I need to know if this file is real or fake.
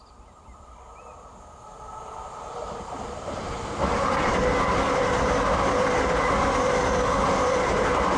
real